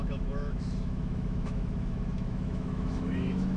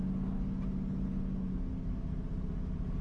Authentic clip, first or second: second